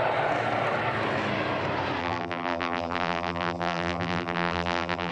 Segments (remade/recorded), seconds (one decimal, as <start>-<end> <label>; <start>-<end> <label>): 0.0-2.0 recorded; 2.0-5.1 remade